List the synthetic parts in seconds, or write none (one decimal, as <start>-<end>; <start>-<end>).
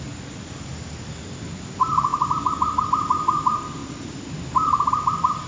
none